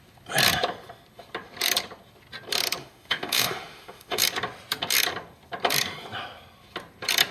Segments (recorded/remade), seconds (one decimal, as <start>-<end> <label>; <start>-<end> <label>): 0.0-2.8 recorded; 2.8-4.2 remade; 4.2-7.3 recorded